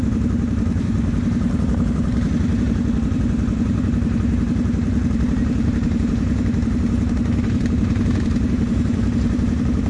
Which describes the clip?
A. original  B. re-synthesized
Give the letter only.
B